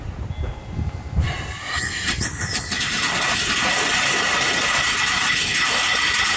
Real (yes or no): yes